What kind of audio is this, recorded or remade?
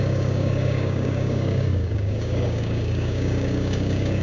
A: remade